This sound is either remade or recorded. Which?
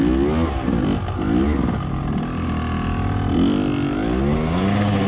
recorded